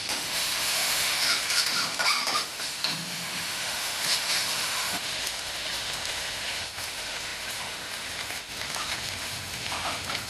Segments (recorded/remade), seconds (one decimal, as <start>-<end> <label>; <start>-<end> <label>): 0.0-10.3 remade